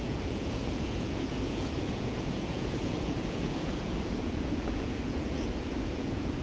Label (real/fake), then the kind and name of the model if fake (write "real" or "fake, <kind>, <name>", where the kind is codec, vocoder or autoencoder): fake, vocoder, Vocos